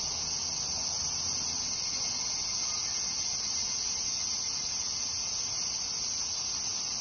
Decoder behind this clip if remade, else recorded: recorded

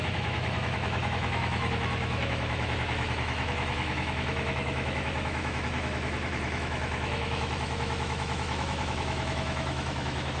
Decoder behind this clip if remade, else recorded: remade, autoencoder, DAC-VAE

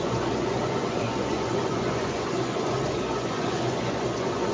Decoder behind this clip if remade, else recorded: remade, vocoder, Vocos